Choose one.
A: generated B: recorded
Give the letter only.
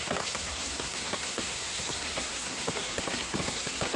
A